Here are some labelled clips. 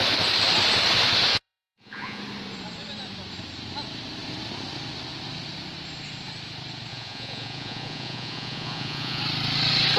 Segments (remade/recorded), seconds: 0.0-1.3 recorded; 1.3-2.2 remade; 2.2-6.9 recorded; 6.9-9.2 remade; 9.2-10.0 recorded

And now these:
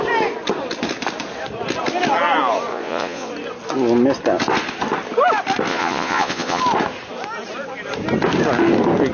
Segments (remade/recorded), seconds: 0.0-2.7 recorded; 2.7-3.3 remade; 3.3-5.7 recorded; 5.7-6.6 remade; 6.6-9.1 recorded

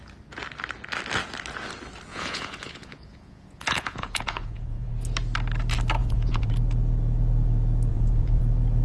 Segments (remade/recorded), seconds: 0.0-2.1 recorded; 2.1-4.9 remade; 4.9-6.0 recorded; 6.0-6.5 remade; 6.5-7.9 recorded; 7.9-8.4 remade; 8.4-8.8 recorded